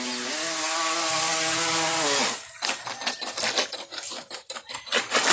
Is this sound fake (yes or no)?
no